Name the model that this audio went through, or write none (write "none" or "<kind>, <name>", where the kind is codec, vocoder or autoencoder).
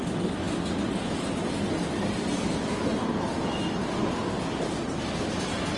none